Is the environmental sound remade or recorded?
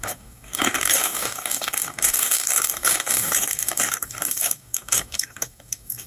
remade